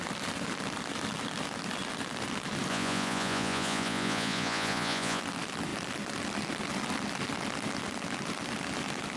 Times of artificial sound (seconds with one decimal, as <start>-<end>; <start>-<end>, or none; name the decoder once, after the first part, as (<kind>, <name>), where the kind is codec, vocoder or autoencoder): 2.7-5.2 (vocoder, Vocos)